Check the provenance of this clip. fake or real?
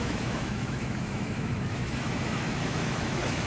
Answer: fake